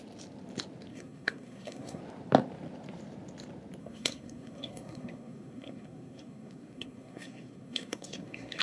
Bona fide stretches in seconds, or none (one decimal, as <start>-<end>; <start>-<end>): 0.0-0.9; 2.0-3.8